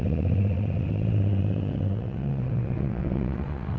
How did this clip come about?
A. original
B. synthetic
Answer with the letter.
B